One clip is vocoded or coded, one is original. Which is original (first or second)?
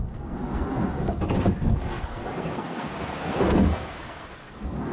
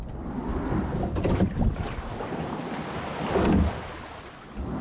second